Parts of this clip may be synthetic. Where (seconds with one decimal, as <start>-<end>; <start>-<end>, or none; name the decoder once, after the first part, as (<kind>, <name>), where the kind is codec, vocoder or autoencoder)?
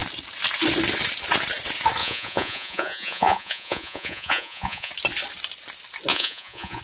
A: 2.0-4.9 (vocoder, Vocos); 6.1-6.8